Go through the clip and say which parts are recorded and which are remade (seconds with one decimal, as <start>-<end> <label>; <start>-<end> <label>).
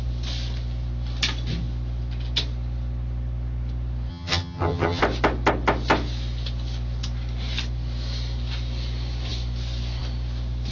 0.0-4.1 recorded; 4.1-5.0 remade; 5.0-10.7 recorded